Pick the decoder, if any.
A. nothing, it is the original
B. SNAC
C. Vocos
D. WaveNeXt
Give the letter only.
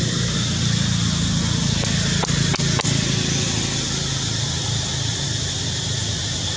A